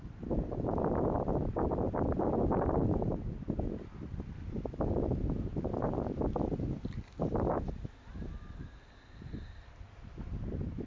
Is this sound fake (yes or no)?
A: no